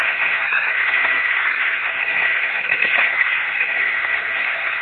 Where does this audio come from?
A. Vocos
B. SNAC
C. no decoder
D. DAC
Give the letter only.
B